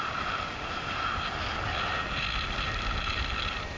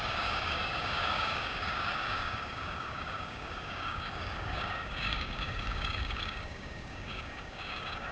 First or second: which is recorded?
first